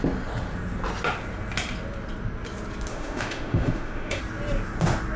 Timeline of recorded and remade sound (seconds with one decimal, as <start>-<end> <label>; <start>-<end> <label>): 0.0-2.9 recorded; 2.9-4.2 remade; 4.2-5.2 recorded